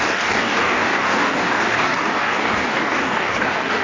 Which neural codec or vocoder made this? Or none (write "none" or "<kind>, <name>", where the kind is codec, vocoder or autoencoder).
codec, DAC